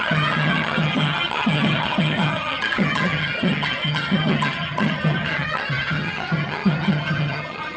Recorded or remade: remade